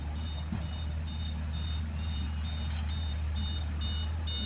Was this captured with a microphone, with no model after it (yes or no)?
yes